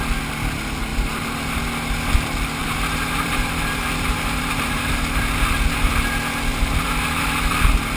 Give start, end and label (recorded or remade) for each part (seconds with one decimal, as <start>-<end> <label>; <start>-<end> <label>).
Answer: 0.0-0.9 recorded; 0.9-1.6 remade; 1.6-2.6 recorded; 2.6-5.2 remade; 5.2-6.5 recorded; 6.5-7.4 remade; 7.4-8.0 recorded

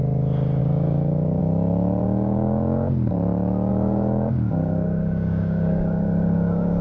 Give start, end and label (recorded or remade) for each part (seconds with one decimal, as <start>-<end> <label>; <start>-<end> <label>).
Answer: 0.0-0.6 recorded; 0.6-1.4 remade; 1.4-2.0 recorded; 2.0-2.9 remade; 2.9-3.7 recorded; 3.7-6.8 remade